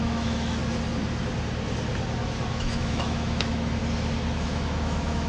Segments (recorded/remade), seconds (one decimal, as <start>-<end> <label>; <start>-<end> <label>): 0.0-0.6 remade; 0.6-2.5 recorded; 2.5-3.8 remade; 3.8-4.4 recorded; 4.4-5.3 remade